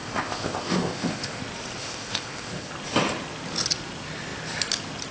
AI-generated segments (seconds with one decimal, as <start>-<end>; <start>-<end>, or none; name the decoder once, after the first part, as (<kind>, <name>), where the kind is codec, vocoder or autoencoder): 0.0-1.4 (codec, ZipCodec); 1.8-2.7